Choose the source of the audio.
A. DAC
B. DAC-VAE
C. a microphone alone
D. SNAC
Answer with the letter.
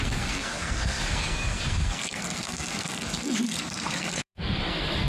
D